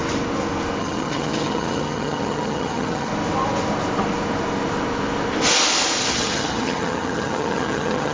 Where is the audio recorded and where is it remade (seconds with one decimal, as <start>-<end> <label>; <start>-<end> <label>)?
0.0-0.8 recorded; 0.8-3.1 remade; 3.1-6.1 recorded; 6.1-8.1 remade